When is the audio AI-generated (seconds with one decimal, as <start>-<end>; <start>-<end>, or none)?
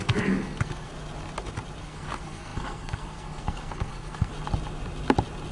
0.0-0.9; 1.8-4.3